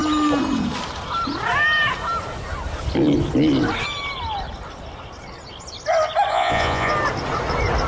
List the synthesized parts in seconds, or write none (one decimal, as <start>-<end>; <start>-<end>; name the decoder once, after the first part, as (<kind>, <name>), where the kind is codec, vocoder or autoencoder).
6.3-6.9 (vocoder, Vocos)